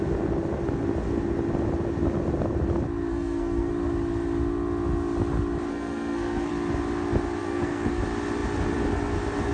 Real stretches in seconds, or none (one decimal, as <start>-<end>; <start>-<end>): 0.0-3.1; 3.7-5.7; 6.5-7.4; 8.0-9.5